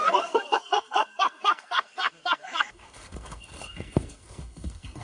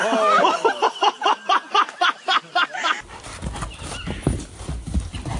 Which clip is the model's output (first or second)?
first